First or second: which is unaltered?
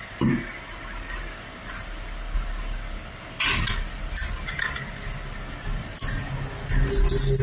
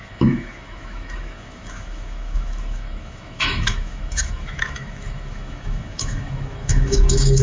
first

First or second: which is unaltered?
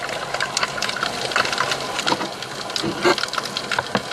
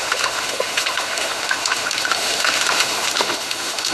first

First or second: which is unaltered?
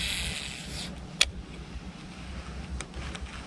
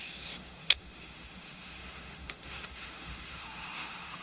first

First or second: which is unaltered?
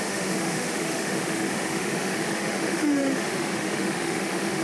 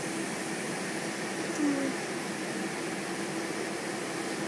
second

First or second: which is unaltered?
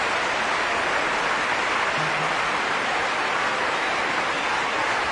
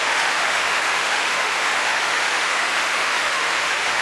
first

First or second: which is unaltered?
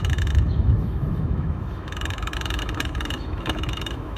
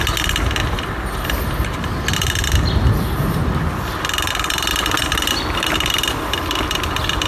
second